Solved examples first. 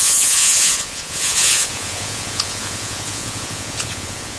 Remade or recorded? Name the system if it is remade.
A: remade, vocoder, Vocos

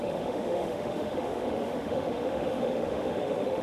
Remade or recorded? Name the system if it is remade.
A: remade, autoencoder, DAC-VAE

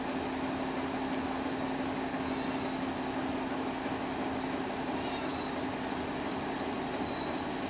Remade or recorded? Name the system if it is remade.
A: recorded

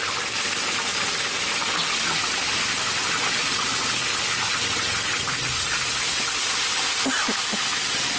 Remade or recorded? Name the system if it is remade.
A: recorded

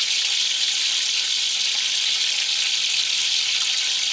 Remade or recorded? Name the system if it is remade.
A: recorded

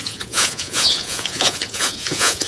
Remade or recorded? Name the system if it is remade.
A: remade, vocoder, Vocos